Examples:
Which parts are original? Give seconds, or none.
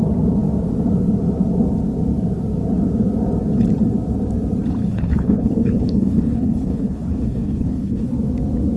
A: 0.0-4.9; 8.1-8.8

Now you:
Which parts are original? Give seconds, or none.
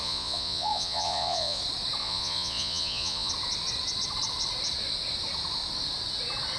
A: 1.6-2.0; 3.3-6.6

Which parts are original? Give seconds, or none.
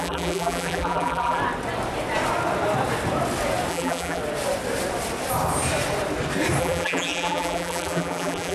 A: 1.4-3.7; 4.2-6.6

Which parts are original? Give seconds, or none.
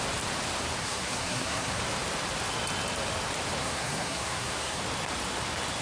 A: 0.0-0.8; 1.8-3.6; 4.8-5.8